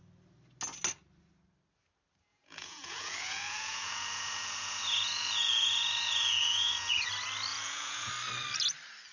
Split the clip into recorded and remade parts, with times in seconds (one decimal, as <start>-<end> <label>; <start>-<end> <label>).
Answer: 0.0-2.3 recorded; 2.3-7.1 remade; 7.1-7.5 recorded; 7.5-8.1 remade; 8.1-9.1 recorded